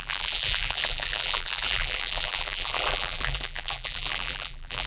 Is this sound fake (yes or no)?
yes